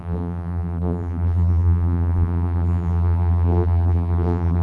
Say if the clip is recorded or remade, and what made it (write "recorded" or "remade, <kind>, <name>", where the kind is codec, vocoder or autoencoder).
remade, vocoder, BigVGAN v2